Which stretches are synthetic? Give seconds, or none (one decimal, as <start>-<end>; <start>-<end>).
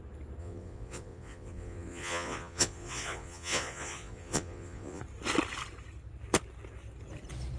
0.4-5.0